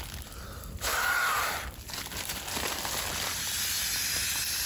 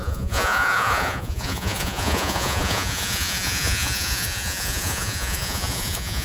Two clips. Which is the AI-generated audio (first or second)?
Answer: second